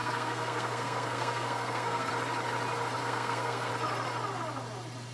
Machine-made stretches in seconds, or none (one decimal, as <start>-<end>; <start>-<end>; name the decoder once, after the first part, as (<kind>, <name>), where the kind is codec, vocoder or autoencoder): 0.0-2.1 (codec, SNAC); 3.0-3.7